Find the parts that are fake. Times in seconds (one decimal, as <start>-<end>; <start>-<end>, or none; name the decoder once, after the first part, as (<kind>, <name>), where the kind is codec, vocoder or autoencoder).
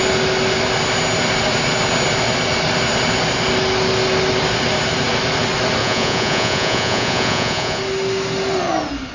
5.8-7.8 (vocoder, Vocos)